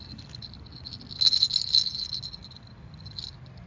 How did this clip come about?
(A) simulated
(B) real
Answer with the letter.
B